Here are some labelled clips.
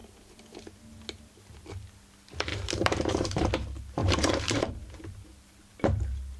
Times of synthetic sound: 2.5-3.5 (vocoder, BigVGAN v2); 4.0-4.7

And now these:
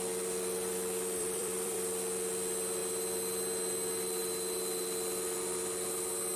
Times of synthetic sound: 1.2-1.8 (vocoder, BigVGAN v2)

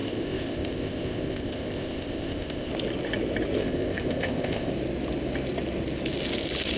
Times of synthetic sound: 0.0-2.7 (codec, ZipCodec); 3.6-4.7

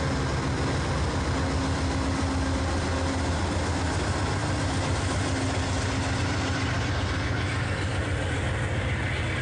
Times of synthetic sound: none

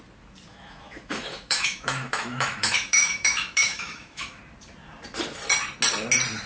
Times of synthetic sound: 0.5-4.4 (autoencoder, DAC-VAE)

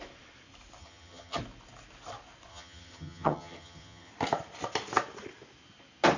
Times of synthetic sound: 0.8-1.4 (vocoder, HiFi-GAN); 2.5-4.1

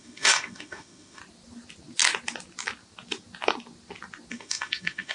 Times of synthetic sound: 0.0-1.2 (autoencoder, DAC-VAE); 4.3-5.1